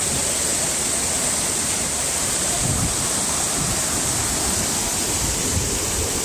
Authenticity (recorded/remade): recorded